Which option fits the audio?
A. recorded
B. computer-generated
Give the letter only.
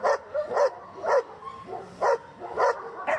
A